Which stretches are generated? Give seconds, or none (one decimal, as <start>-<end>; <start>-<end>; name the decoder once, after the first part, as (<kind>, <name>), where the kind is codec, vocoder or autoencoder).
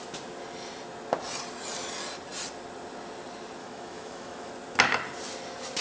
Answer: 3.6-4.5 (autoencoder, DAC-VAE)